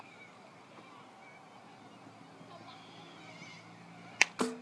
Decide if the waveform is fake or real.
real